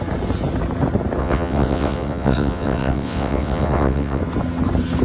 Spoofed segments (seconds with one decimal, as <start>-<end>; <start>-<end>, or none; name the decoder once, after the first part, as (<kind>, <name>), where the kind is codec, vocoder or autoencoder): 1.2-4.2 (vocoder, WaveNeXt)